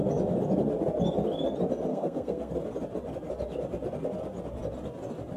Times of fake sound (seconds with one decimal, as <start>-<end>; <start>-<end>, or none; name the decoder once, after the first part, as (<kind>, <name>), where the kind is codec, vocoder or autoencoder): 1.9-2.5 (codec, SNAC)